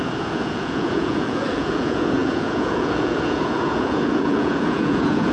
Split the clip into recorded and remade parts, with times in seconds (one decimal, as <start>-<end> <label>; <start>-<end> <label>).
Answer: 0.0-5.3 remade